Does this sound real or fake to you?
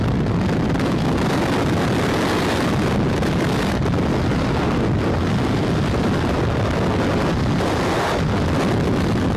real